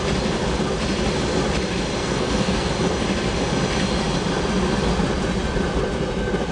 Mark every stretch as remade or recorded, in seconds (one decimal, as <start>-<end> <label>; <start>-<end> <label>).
0.0-2.0 recorded; 2.0-2.7 remade; 2.7-6.5 recorded